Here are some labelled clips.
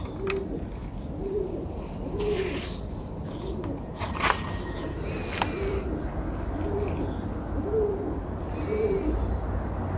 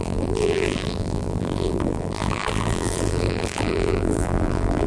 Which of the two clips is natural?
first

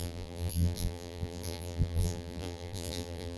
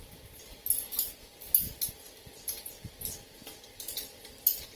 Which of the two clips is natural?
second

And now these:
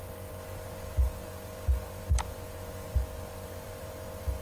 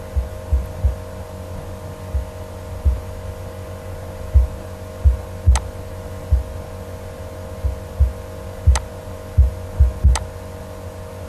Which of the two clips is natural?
second